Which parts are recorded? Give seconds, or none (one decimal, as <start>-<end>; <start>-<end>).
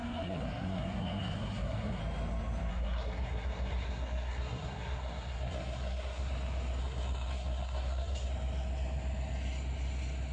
2.0-2.7; 6.3-6.8; 8.3-10.3